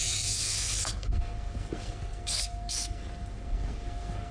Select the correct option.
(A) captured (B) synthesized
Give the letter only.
B